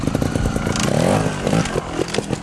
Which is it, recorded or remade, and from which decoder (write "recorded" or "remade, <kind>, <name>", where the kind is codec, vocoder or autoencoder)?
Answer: recorded